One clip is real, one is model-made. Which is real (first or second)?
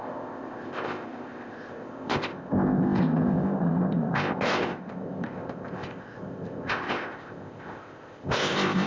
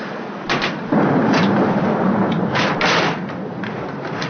second